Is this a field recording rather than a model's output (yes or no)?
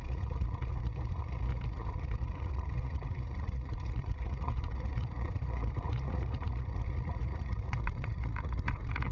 no